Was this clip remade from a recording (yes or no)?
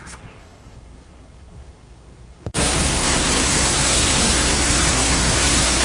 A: yes